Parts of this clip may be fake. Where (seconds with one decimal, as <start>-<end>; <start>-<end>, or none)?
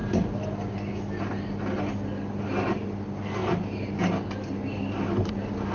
none